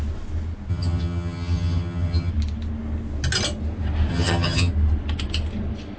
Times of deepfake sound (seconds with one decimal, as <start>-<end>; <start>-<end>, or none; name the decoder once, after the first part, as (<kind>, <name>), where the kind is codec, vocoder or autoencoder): 0.7-2.3 (vocoder, HiFi-GAN); 4.1-4.7